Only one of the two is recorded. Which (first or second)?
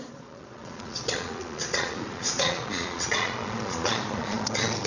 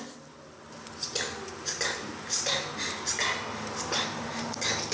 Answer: second